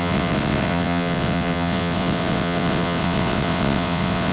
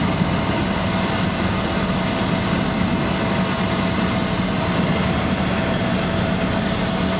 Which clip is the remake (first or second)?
first